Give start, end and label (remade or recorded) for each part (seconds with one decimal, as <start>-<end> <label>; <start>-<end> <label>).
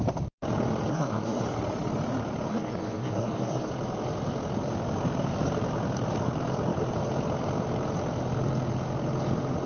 0.0-0.9 recorded; 0.9-1.4 remade; 1.4-2.5 recorded; 2.5-3.7 remade; 3.7-9.7 recorded